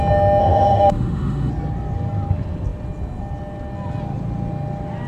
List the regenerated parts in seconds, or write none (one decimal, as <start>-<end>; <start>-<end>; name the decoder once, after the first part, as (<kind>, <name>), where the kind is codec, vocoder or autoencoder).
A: 0.4-1.5 (autoencoder, DAC-VAE)